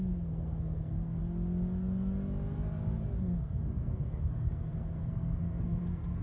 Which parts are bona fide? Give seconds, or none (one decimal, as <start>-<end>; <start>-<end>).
1.2-3.2